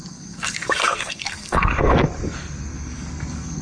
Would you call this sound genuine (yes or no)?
no